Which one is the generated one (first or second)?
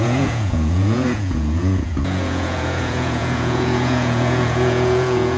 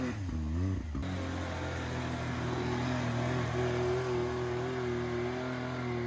first